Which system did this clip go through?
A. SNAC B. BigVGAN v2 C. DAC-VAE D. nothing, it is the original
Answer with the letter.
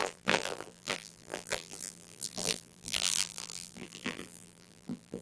B